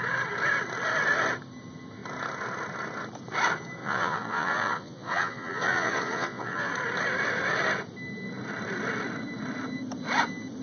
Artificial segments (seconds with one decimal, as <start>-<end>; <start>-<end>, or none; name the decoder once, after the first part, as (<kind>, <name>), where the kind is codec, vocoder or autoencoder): 3.8-6.7 (vocoder, Vocos)